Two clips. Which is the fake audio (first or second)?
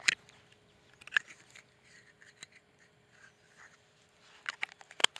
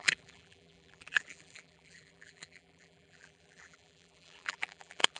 second